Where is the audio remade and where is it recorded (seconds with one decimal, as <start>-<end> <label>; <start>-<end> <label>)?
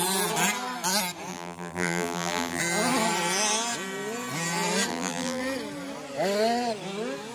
0.0-1.3 recorded; 1.3-2.6 remade; 2.6-4.9 recorded; 4.9-5.4 remade; 5.4-7.3 recorded